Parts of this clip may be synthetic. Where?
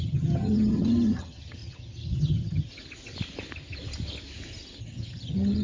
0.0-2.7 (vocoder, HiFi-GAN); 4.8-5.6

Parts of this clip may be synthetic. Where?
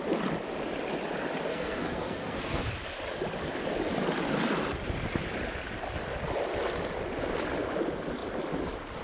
1.5-2.6 (codec, SNAC)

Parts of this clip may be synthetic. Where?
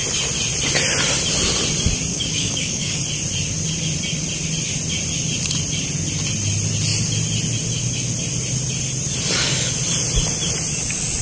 2.1-3.0 (codec, DAC)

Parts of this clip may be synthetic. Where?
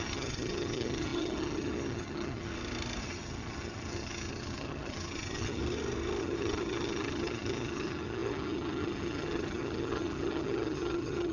0.0-2.5 (vocoder, HiFi-GAN); 3.0-5.6; 6.2-11.3